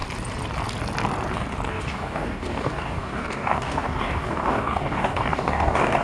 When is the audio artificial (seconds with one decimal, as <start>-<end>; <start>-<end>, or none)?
1.7-6.0